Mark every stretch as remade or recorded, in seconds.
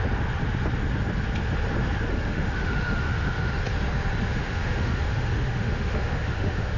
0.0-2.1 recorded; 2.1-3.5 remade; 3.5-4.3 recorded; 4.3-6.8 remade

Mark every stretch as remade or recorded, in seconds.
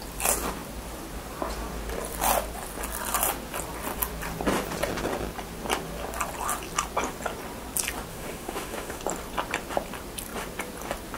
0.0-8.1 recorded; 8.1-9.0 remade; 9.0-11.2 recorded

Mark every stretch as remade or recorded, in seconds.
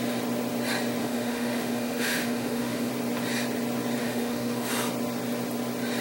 0.0-1.0 recorded; 1.0-2.9 remade; 2.9-4.0 recorded; 4.0-4.7 remade; 4.7-6.0 recorded